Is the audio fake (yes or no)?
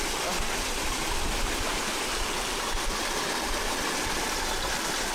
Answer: yes